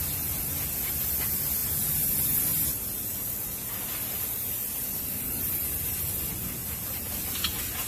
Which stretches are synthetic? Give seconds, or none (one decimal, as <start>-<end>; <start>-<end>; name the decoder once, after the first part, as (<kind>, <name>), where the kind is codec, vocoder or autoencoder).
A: 6.6-7.3 (vocoder, BigVGAN v2)

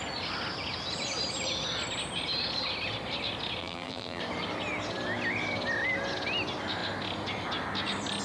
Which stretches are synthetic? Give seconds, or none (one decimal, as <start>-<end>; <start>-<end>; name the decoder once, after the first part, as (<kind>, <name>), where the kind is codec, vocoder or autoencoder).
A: 3.6-4.2 (vocoder, BigVGAN v2)

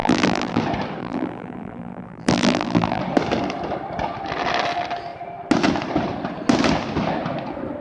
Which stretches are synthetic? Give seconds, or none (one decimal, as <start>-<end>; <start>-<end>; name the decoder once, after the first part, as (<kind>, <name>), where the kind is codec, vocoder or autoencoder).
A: 0.0-0.6 (vocoder, BigVGAN v2); 1.0-3.0

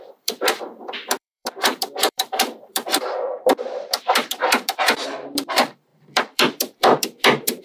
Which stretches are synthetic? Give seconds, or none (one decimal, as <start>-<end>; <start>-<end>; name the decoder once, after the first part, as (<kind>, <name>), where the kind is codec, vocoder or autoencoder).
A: 0.0-7.6 (vocoder, BigVGAN v2)

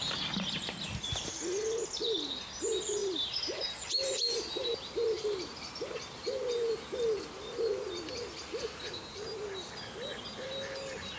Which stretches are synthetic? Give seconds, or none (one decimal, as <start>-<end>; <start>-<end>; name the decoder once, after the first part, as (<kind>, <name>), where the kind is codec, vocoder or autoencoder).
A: 3.0-6.7 (vocoder, BigVGAN v2)

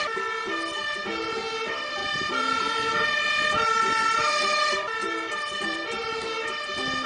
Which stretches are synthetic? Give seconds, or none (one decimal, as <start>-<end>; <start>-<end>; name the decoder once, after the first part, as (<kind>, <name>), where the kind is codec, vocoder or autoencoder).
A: 2.0-6.3 (vocoder, BigVGAN v2)

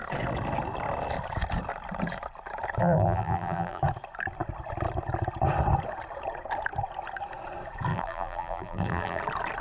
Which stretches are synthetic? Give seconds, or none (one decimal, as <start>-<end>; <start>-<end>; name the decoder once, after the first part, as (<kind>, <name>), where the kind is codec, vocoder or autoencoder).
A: 2.8-3.8 (vocoder, BigVGAN v2); 7.9-9.2

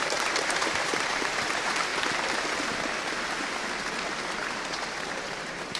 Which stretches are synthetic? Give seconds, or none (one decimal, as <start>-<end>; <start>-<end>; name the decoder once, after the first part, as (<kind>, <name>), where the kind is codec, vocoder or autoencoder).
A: 0.0-1.9 (vocoder, BigVGAN v2); 5.2-5.8